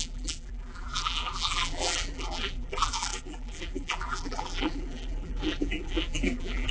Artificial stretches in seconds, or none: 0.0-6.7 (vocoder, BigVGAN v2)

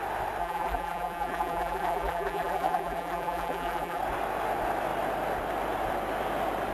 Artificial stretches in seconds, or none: 0.4-4.0 (vocoder, BigVGAN v2)

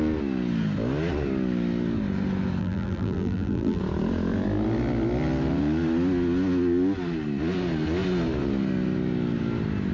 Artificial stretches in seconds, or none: 2.6-3.8 (vocoder, BigVGAN v2)

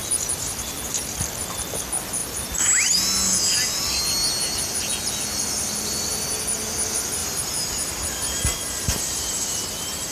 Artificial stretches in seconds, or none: 7.2-10.1 (vocoder, BigVGAN v2)

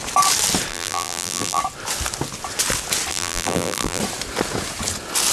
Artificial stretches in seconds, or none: 0.7-1.6 (vocoder, BigVGAN v2); 3.1-4.0

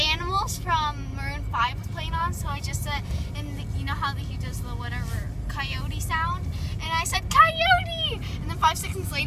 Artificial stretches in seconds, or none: 1.5-2.6 (vocoder, BigVGAN v2)

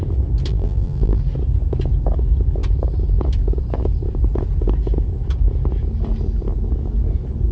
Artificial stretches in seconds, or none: 0.5-1.2 (vocoder, BigVGAN v2)

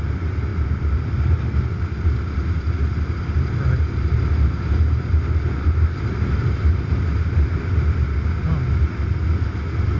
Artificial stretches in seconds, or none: 0.5-1.1 (vocoder, BigVGAN v2)